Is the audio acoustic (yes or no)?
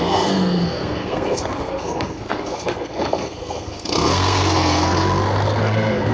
no